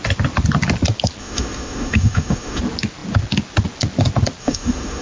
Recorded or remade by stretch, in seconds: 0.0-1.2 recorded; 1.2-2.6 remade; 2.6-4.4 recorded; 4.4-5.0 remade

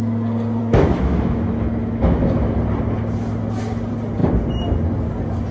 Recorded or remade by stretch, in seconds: 0.0-0.6 recorded; 0.6-2.5 remade; 2.5-5.5 recorded

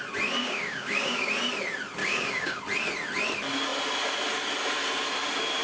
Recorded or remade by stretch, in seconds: 0.0-0.4 recorded; 0.4-1.3 remade; 1.3-2.0 recorded; 2.0-2.6 remade; 2.6-5.6 recorded

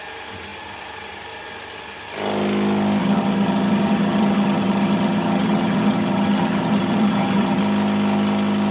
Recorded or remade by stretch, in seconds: 0.0-3.0 recorded; 3.0-7.6 remade; 7.6-8.7 recorded

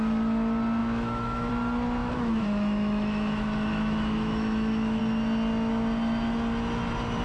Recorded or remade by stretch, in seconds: 0.0-0.8 recorded; 0.8-1.5 remade; 1.5-2.0 recorded; 2.0-5.0 remade; 5.0-7.2 recorded

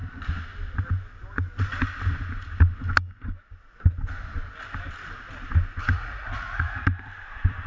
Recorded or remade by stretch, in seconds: 0.0-5.8 recorded; 5.8-6.8 remade; 6.8-7.7 recorded

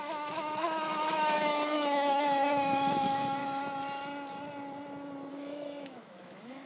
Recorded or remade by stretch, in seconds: 0.0-3.4 remade; 3.4-5.3 recorded; 5.3-6.7 remade